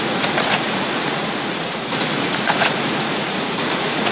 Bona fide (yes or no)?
no